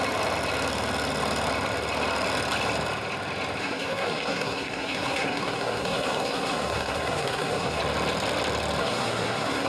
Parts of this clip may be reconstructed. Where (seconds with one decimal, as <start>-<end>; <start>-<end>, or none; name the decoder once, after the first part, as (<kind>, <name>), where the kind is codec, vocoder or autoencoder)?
3.6-7.8 (codec, SNAC); 8.8-9.7

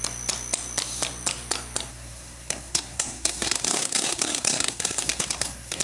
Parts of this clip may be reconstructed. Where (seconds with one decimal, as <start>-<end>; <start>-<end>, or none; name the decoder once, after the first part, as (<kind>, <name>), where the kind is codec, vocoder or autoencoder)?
1.9-5.8 (codec, SNAC)